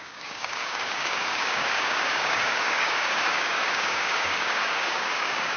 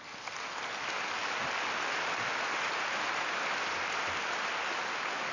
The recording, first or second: second